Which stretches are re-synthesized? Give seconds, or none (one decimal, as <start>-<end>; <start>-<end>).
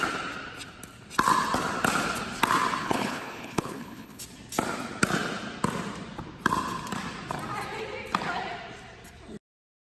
2.8-4.2